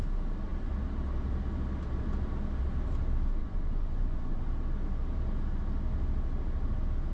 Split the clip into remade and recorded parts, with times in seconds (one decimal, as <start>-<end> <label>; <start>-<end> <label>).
0.0-3.4 recorded; 3.4-4.4 remade; 4.4-7.1 recorded